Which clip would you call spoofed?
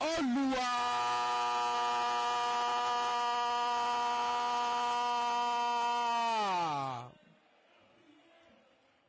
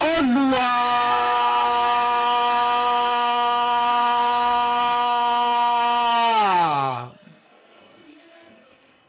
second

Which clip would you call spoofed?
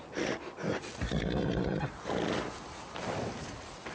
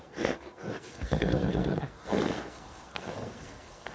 second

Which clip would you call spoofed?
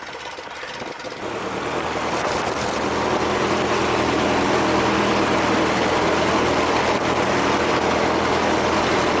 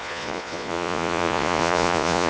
second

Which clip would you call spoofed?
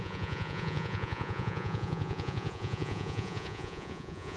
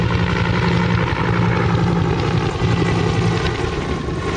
first